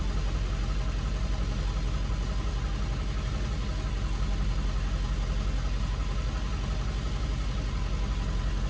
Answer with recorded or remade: recorded